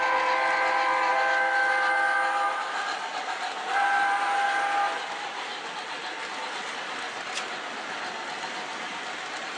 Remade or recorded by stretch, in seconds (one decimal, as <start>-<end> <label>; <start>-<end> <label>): 0.0-9.6 recorded